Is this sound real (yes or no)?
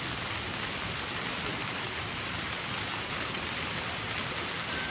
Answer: no